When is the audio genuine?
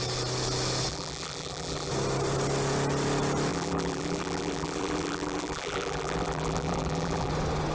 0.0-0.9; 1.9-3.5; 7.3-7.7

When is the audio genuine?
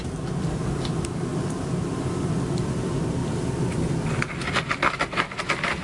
0.0-5.8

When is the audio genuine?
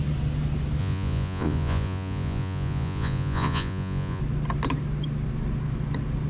0.0-0.8; 4.2-6.3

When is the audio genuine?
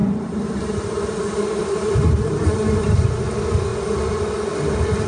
3.1-5.1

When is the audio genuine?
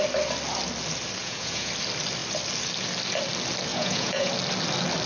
0.0-1.2; 1.7-3.7; 4.3-5.1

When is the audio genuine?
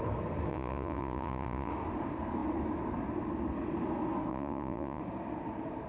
0.0-0.5; 1.7-4.3; 5.0-5.9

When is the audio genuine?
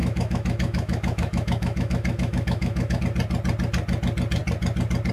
3.0-5.1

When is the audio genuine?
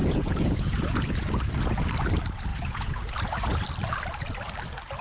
1.3-2.5; 3.1-5.0